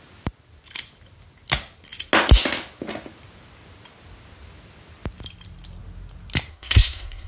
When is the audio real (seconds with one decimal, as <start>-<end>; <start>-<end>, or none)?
0.0-6.5